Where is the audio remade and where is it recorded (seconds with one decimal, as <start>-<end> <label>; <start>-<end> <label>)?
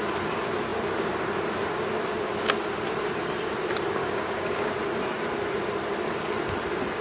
0.0-4.0 recorded; 4.0-4.7 remade; 4.7-7.0 recorded